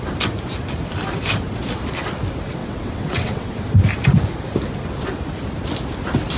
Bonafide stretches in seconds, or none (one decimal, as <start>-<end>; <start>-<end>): 0.0-2.6; 3.5-6.4